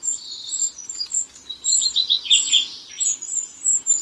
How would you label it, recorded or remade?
recorded